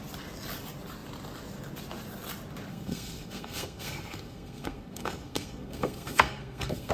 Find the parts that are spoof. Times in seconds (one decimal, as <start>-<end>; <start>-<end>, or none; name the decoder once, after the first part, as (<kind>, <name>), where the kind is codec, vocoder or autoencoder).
2.7-6.9 (codec, SNAC)